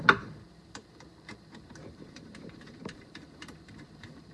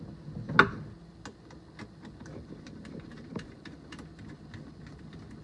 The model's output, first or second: first